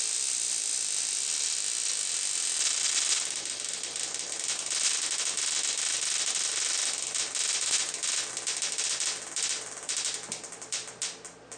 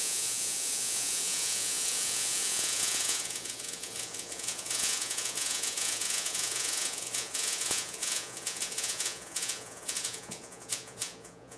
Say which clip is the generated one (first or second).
second